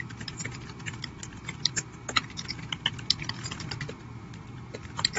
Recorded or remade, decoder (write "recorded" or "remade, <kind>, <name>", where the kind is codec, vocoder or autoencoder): remade, vocoder, BigVGAN v2